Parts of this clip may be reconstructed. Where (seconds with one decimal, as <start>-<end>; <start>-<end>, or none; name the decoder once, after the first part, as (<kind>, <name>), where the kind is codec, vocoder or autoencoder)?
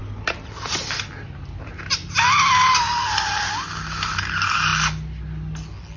none